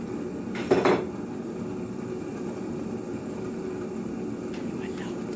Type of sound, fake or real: real